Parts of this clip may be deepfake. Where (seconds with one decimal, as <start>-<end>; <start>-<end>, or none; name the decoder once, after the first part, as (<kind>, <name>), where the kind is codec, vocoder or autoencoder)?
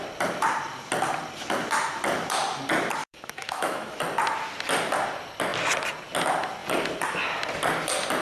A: 3.0-4.0 (autoencoder, DAC-VAE)